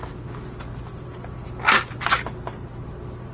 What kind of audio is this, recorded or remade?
recorded